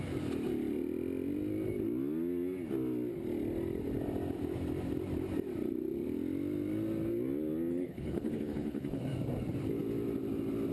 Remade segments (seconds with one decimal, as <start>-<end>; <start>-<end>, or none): 7.7-9.0